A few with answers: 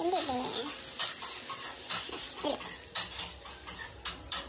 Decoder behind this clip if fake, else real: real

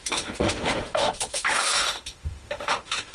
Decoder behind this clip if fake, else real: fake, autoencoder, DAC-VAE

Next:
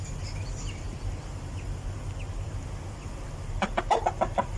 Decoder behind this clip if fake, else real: real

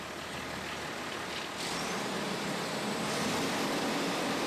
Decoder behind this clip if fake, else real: real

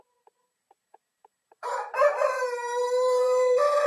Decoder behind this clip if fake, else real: fake, vocoder, BigVGAN v2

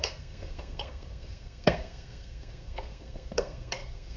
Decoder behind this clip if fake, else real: fake, codec, SNAC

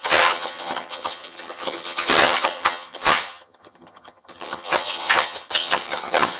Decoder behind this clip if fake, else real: fake, vocoder, HiFi-GAN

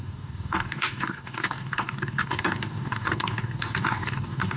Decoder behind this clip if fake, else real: fake, codec, DAC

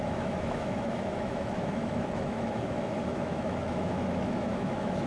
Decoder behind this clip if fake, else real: fake, autoencoder, DAC-VAE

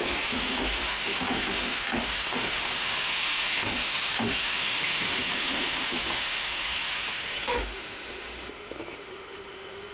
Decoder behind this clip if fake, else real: fake, autoencoder, DAC-VAE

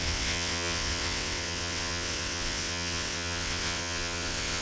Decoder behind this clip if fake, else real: fake, vocoder, WaveNeXt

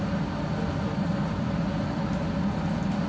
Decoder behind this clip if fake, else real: real